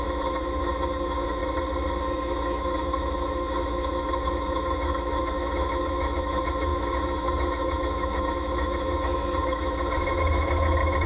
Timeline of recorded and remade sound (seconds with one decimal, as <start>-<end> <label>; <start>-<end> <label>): 0.0-1.4 remade; 1.4-2.0 recorded; 2.0-11.1 remade